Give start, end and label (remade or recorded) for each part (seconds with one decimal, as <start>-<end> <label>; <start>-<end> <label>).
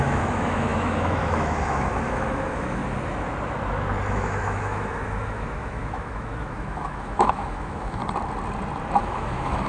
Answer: 0.0-2.8 remade; 2.8-4.1 recorded; 4.1-8.0 remade; 8.0-9.0 recorded; 9.0-9.7 remade